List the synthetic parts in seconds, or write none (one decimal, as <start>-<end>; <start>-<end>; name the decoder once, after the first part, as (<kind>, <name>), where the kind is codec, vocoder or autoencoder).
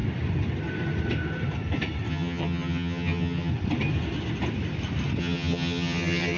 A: 2.1-3.5 (vocoder, HiFi-GAN); 5.2-6.4